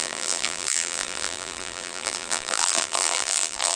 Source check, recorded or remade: remade